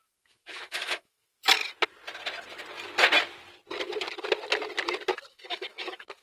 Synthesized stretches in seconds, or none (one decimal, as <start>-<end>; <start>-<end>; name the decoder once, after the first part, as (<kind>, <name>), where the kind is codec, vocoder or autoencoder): 0.0-1.6 (autoencoder, DAC-VAE); 5.3-6.2